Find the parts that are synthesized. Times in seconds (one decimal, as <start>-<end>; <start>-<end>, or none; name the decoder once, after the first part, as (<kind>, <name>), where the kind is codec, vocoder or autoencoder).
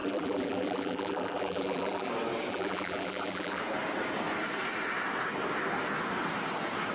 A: 0.0-2.1 (vocoder, BigVGAN v2); 2.5-3.6